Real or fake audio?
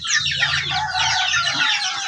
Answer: real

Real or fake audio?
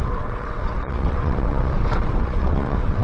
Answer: fake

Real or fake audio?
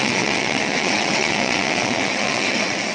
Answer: fake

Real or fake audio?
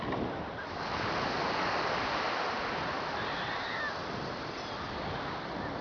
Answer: real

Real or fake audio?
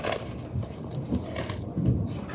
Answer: real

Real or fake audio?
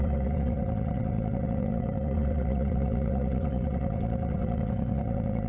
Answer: fake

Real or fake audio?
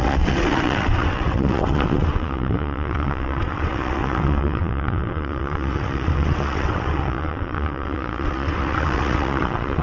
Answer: fake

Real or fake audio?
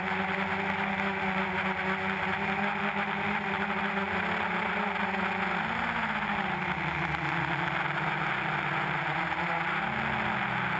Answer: real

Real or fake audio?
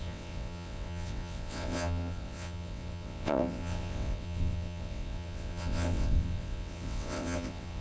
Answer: fake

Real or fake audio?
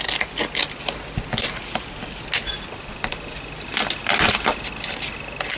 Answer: real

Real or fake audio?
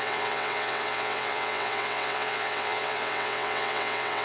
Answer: fake